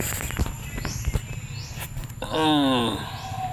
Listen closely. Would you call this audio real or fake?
real